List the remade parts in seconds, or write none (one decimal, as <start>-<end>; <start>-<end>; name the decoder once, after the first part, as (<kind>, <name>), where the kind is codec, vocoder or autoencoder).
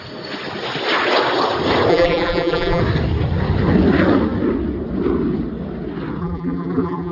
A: 1.9-2.8 (vocoder, BigVGAN v2); 6.2-7.1